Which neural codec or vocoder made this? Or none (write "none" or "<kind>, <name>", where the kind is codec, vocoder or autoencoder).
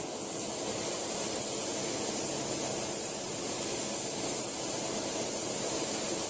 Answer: none